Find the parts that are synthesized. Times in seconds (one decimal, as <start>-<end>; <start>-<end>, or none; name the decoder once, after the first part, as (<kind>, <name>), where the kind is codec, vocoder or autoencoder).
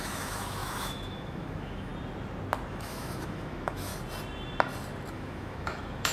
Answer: 0.0-1.9 (autoencoder, DAC-VAE); 2.7-3.9; 5.1-6.1